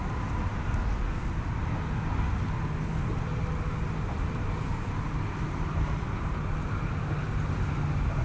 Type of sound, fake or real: real